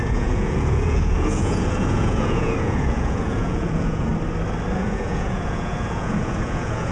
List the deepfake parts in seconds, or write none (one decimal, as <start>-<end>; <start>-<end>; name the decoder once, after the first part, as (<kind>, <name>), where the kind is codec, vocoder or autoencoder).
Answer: 0.0-4.1 (vocoder, Vocos); 4.7-6.9